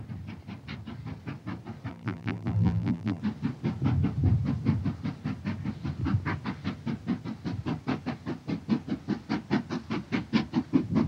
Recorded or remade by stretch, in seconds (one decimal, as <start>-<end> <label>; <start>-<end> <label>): 0.0-1.9 recorded; 1.9-3.2 remade; 3.2-11.1 recorded